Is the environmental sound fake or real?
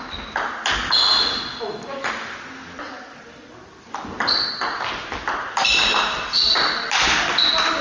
real